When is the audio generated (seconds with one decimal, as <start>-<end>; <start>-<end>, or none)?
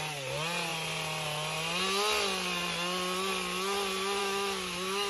4.2-5.1